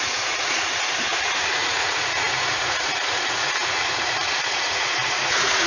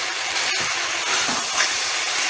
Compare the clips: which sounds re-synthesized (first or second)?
first